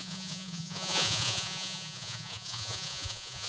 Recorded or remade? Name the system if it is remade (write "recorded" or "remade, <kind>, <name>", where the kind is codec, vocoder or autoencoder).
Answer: remade, vocoder, Vocos